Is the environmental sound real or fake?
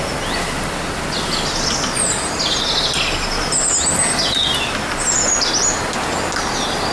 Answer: real